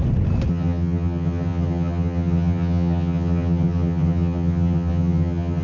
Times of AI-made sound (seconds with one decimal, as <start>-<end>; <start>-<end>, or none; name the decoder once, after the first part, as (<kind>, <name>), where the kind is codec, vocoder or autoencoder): 0.5-5.6 (vocoder, HiFi-GAN)